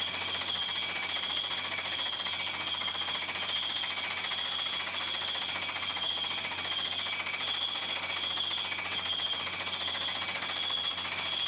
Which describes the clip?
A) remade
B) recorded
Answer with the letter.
B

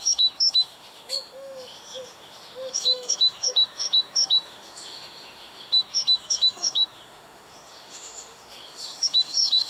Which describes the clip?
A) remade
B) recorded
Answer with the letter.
A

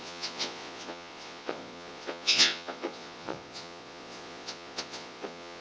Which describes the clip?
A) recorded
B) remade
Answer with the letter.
B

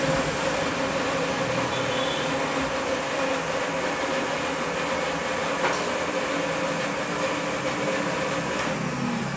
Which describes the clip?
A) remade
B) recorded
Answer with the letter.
B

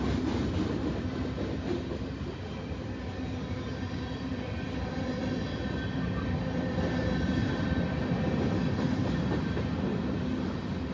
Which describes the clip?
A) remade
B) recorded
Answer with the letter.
B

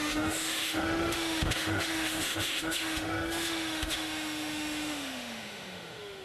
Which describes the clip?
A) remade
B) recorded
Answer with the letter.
A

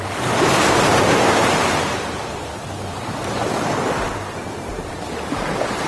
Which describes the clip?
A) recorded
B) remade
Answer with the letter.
B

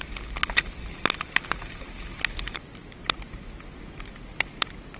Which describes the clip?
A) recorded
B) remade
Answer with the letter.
A